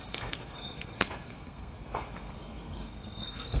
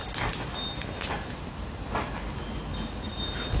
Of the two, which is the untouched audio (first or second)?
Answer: second